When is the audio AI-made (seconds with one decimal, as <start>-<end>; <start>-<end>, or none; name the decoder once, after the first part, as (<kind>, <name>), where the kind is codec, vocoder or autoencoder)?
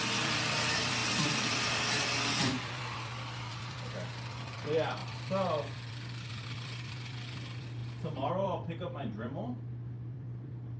0.0-7.8 (vocoder, BigVGAN v2); 8.3-10.8